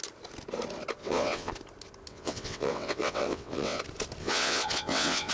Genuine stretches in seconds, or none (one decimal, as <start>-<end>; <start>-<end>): 0.0-1.0; 1.5-2.1; 3.8-4.2